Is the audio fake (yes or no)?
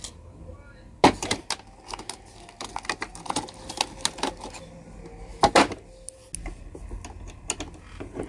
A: no